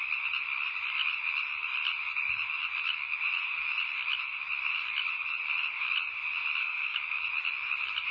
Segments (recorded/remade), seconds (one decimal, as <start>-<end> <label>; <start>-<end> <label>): 0.0-6.6 recorded; 6.6-7.2 remade; 7.2-8.1 recorded